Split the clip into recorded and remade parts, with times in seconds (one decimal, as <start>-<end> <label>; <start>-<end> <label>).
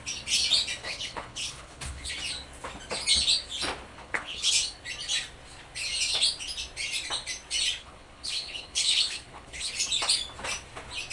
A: 0.0-0.8 recorded; 0.8-2.1 remade; 2.1-3.9 recorded; 3.9-4.5 remade; 4.5-7.8 recorded; 7.8-9.7 remade; 9.7-11.1 recorded